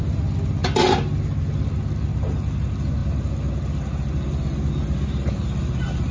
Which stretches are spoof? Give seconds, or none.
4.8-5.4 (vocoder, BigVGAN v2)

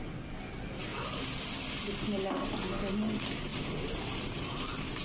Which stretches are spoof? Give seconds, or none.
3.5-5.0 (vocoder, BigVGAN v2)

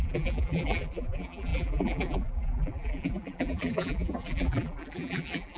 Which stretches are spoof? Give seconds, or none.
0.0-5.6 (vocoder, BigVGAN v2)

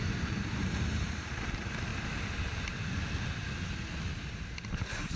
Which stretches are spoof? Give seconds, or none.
0.0-1.9 (vocoder, BigVGAN v2); 4.8-5.2

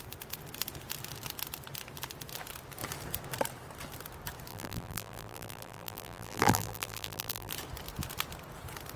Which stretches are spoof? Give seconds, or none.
4.5-7.5 (vocoder, BigVGAN v2)